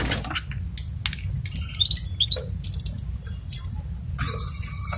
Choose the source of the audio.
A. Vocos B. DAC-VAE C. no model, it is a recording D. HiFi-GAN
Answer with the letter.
C